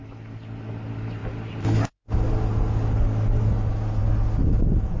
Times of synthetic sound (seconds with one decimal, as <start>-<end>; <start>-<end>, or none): none